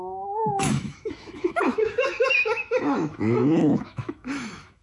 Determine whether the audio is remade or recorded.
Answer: remade